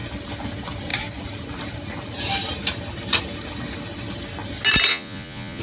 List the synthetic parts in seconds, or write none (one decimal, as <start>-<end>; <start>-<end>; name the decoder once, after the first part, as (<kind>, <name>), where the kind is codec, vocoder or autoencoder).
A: 4.9-5.6 (vocoder, Vocos)